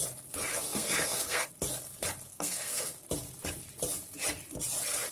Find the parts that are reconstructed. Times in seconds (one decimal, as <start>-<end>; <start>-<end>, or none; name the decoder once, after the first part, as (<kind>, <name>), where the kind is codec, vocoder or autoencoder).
0.5-1.5 (codec, SNAC); 2.3-3.0